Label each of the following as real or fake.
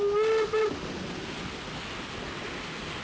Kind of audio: real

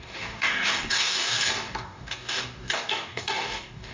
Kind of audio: fake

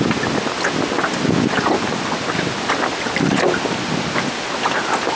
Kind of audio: real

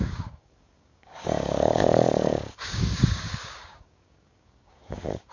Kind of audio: fake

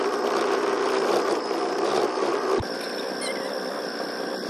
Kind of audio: real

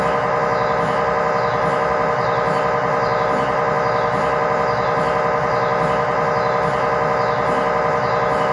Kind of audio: real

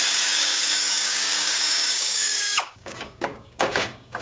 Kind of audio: fake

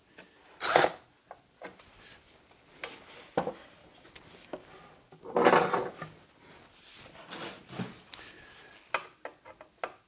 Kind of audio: real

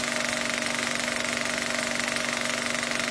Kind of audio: real